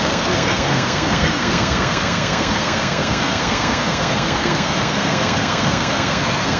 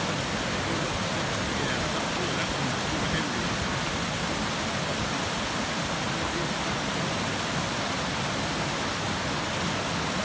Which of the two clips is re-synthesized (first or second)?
first